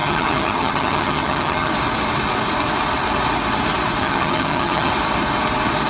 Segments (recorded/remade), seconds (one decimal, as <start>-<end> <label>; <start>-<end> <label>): 0.0-1.7 remade; 1.7-4.0 recorded; 4.0-4.9 remade; 4.9-5.9 recorded